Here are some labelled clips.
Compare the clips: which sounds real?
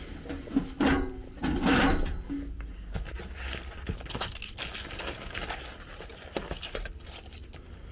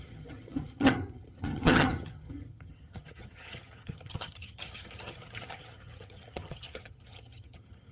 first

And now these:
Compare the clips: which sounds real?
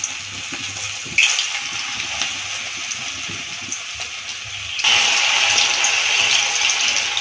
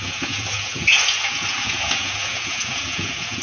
first